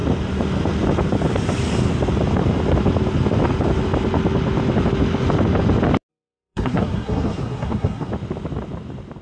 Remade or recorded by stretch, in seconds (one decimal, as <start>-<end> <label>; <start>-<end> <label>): 0.0-6.1 recorded; 6.1-8.1 remade; 8.1-9.2 recorded